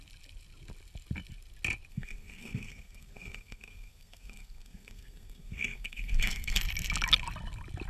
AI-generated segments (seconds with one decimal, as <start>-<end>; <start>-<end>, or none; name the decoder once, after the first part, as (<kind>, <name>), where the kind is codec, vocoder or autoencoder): 1.9-6.6 (codec, SNAC)